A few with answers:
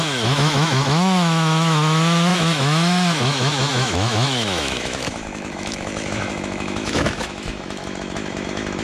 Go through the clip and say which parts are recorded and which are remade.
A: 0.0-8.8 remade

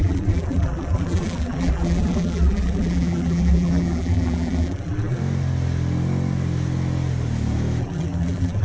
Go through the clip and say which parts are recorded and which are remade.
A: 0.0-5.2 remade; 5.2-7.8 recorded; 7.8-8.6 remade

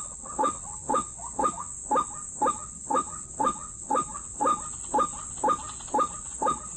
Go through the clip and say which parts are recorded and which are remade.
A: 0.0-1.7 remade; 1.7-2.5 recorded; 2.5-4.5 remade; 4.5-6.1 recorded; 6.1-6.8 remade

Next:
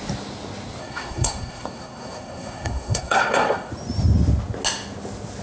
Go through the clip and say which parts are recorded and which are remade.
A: 0.0-0.8 recorded; 0.8-3.7 remade; 3.7-5.4 recorded